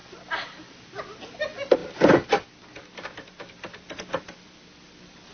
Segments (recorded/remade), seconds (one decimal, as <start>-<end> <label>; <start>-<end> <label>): 0.0-5.3 recorded